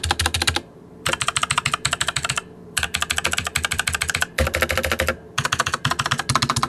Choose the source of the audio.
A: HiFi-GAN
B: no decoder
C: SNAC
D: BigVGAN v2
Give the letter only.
D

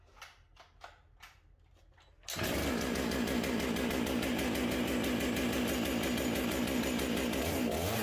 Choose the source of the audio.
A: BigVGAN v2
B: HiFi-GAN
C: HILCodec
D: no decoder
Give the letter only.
D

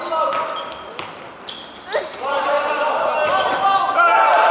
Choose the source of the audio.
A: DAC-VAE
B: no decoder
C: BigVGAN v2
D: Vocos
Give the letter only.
B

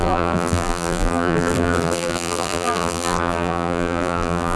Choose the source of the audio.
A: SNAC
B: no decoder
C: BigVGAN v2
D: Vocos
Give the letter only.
C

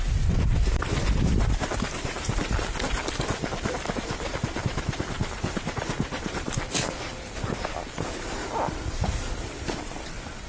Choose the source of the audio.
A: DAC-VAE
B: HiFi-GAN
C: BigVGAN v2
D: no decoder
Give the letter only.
C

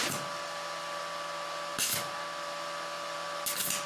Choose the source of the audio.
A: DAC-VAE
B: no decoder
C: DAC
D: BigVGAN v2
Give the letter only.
B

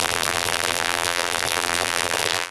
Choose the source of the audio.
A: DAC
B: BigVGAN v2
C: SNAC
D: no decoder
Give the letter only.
B